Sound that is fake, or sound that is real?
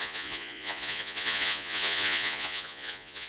fake